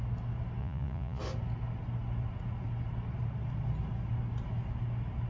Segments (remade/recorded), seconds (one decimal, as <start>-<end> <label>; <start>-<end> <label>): 0.0-0.6 recorded; 0.6-1.2 remade; 1.2-5.3 recorded